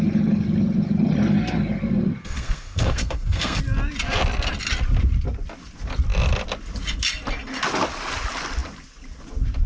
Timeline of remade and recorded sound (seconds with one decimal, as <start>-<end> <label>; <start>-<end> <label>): 0.0-2.2 recorded; 2.2-3.6 remade; 3.6-9.7 recorded